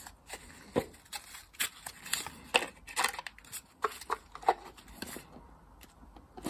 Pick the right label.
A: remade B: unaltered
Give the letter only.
B